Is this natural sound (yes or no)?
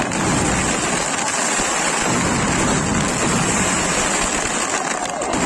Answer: yes